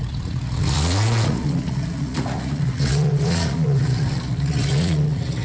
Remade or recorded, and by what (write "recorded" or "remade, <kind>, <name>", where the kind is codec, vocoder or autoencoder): remade, vocoder, Vocos